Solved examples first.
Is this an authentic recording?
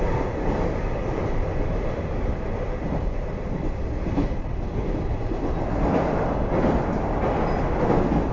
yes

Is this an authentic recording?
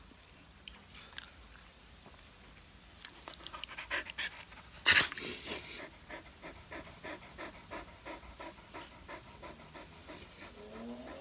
yes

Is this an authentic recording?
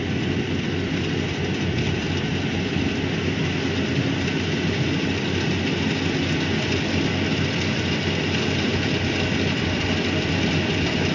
yes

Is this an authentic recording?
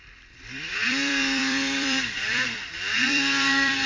no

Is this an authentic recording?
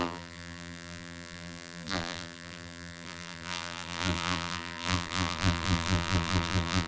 no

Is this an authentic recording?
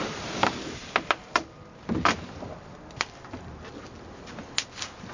no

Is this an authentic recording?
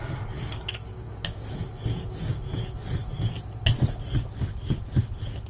yes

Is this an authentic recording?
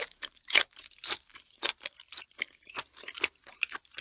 no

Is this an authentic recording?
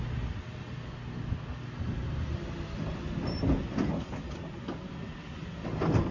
yes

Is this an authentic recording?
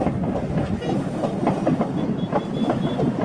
yes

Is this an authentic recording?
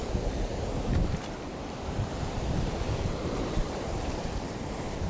no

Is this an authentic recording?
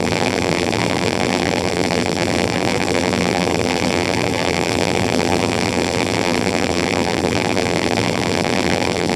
no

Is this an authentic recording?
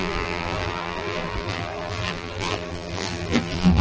no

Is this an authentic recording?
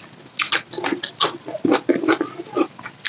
yes